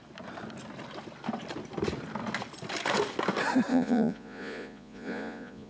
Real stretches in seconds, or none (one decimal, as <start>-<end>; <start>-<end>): 0.0-3.7